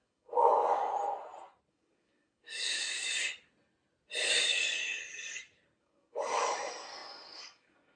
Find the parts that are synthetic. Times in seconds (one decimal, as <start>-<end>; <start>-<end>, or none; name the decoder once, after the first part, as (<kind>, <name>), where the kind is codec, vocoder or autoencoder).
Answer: 0.0-0.9 (codec, DAC); 1.7-3.1; 4.3-5.0; 5.8-8.0